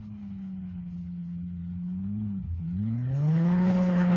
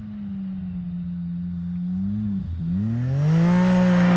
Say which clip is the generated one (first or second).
first